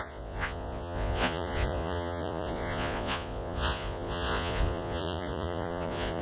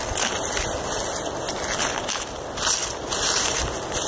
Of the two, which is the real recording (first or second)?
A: second